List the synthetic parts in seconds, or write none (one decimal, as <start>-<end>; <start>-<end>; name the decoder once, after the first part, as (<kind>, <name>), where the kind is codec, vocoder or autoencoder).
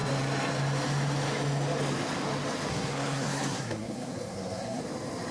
2.7-4.8 (codec, SNAC)